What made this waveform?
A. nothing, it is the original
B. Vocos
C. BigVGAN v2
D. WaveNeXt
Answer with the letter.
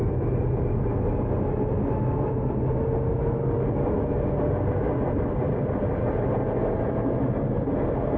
A